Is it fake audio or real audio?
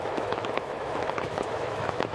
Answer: fake